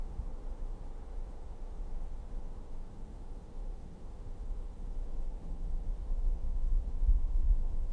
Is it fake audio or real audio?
fake